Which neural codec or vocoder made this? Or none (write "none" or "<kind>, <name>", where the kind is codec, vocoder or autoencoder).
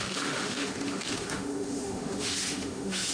autoencoder, DAC-VAE